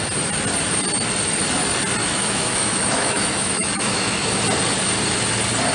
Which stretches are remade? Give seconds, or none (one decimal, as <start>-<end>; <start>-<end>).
2.0-4.4